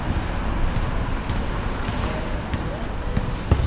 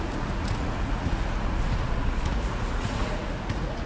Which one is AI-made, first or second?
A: second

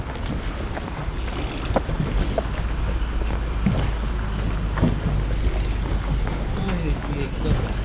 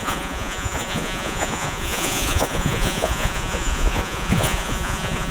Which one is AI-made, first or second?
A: second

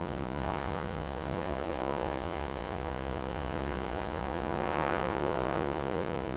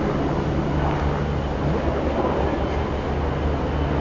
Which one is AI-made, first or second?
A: first